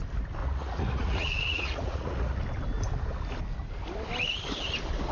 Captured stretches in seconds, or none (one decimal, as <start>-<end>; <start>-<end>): 0.0-0.4; 2.4-5.1